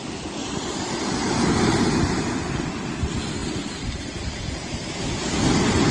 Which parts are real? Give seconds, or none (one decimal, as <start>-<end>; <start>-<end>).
0.0-5.9